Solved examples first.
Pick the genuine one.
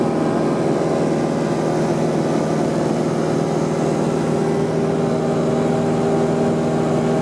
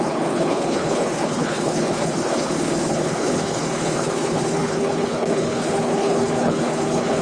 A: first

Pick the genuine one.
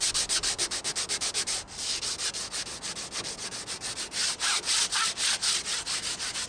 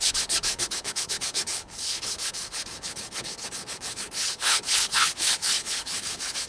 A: first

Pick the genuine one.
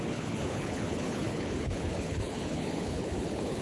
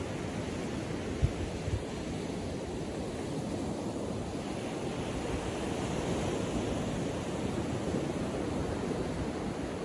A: second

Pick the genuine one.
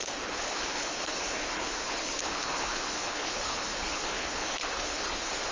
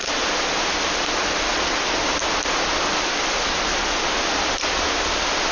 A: second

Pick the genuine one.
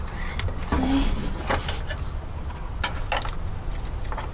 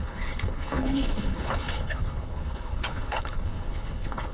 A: first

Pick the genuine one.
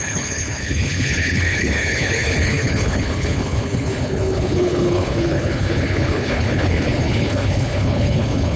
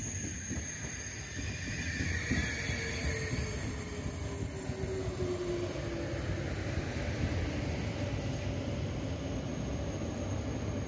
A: second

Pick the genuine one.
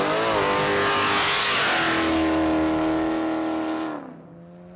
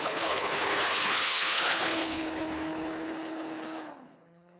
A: first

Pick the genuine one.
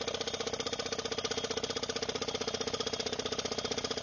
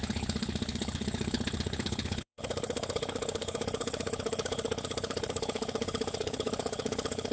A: first